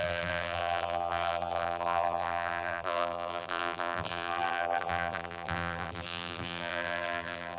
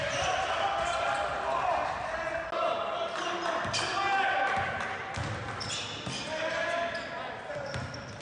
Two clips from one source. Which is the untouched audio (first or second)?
second